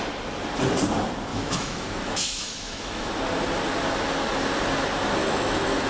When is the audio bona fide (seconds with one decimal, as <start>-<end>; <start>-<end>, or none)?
0.0-1.3; 3.1-5.2